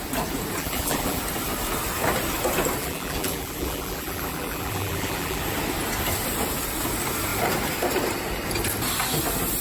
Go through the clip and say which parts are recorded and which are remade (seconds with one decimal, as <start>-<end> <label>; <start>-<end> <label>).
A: 0.0-0.6 recorded; 0.6-1.2 remade; 1.2-2.8 recorded; 2.8-5.4 remade; 5.4-9.6 recorded